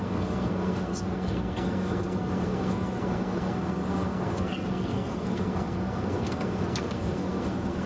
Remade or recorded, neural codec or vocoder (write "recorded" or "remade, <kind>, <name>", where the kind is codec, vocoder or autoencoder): remade, codec, SNAC